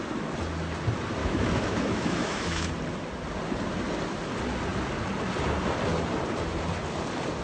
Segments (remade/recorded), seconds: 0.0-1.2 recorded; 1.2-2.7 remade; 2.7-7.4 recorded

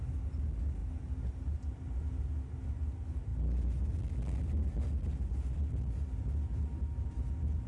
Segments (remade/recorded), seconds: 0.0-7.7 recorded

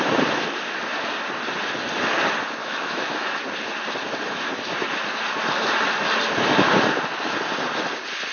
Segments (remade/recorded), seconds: 0.0-2.6 recorded; 2.6-3.4 remade; 3.4-8.3 recorded